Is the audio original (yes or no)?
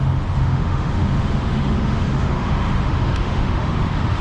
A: no